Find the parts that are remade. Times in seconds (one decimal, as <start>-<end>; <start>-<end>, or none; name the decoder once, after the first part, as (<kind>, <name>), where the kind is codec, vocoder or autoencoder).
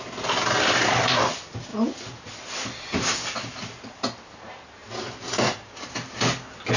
none